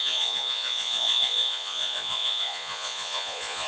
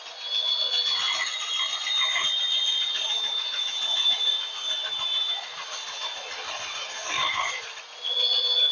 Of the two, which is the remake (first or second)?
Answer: first